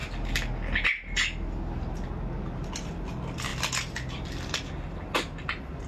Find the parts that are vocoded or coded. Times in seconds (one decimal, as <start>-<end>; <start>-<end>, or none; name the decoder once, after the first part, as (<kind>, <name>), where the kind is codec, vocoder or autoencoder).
none